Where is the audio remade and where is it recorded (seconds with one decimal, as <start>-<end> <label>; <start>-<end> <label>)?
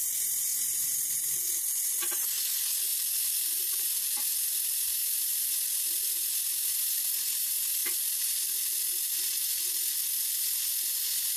0.0-2.9 recorded; 2.9-5.2 remade; 5.2-7.8 recorded; 7.8-9.4 remade; 9.4-11.4 recorded